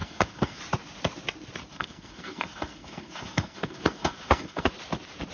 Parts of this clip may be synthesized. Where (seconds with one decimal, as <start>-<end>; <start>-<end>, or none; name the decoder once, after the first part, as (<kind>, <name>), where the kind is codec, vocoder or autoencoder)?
0.0-0.6 (codec, SNAC); 1.7-4.7